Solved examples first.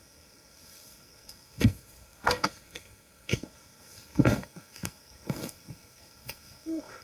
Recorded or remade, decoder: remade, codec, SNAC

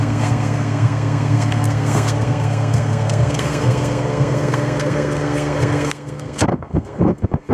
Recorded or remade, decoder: remade, codec, SNAC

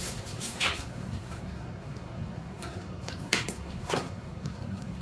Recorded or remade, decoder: remade, codec, SNAC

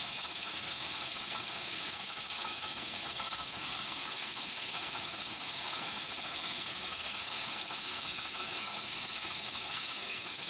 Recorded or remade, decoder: remade, codec, SNAC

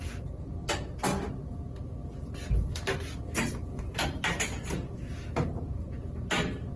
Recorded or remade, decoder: recorded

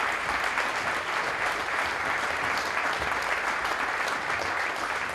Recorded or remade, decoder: recorded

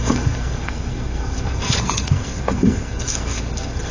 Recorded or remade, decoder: remade, codec, SNAC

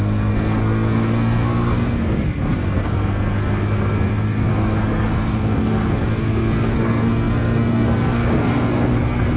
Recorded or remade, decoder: remade, codec, SNAC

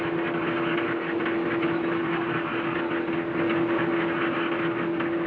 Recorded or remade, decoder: recorded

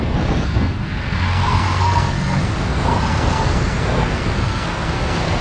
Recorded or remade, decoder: remade, codec, SNAC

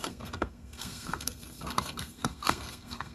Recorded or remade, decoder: remade, codec, SNAC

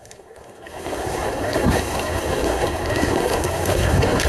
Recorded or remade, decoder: remade, codec, SNAC